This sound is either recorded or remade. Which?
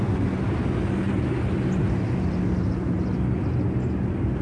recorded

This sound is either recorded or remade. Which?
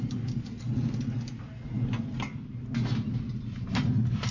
recorded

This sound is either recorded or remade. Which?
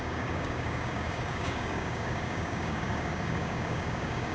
remade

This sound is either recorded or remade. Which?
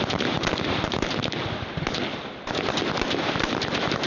recorded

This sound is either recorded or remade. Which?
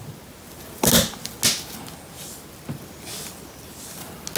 recorded